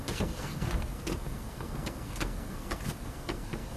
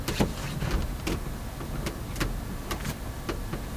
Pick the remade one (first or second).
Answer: first